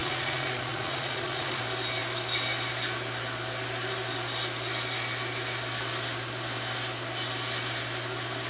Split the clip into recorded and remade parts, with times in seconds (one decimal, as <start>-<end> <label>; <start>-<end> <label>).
0.0-1.6 remade; 1.6-8.5 recorded